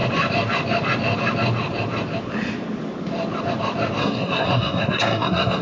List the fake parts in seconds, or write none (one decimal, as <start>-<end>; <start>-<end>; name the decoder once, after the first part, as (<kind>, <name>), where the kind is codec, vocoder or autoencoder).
4.0-5.6 (codec, SNAC)